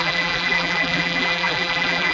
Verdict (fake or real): fake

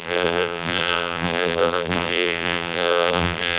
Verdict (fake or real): fake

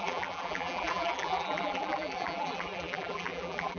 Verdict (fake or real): fake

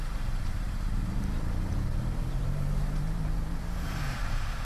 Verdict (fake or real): fake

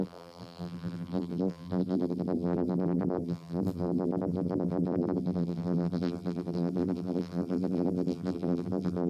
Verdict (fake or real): fake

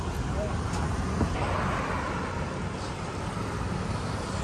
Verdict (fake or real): real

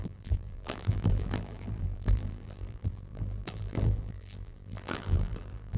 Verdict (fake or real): fake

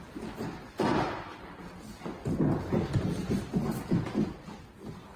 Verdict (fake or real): real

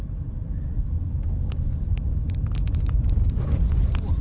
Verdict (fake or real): real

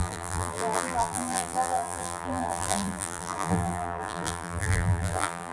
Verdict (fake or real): fake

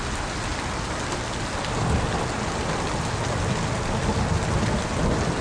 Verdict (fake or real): real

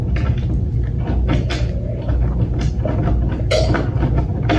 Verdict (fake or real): real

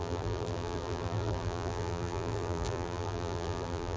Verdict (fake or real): fake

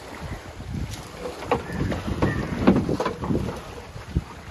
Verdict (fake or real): real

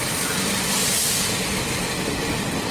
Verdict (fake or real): real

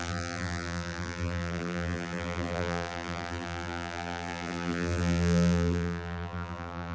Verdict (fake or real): fake